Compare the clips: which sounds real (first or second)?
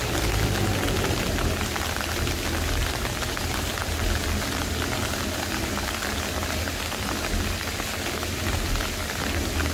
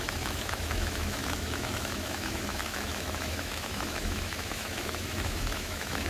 first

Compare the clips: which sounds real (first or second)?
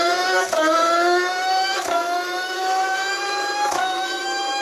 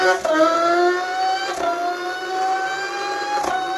second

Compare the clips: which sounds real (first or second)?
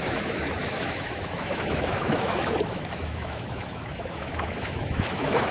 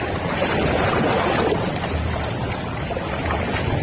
second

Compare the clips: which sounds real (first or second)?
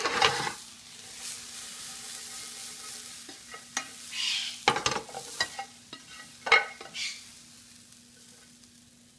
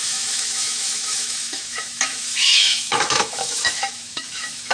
first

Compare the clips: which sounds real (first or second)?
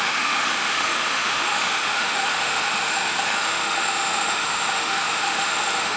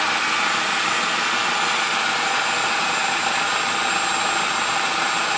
second